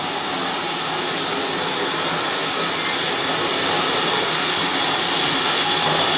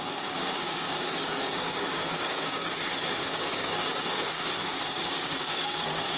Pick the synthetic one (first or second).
second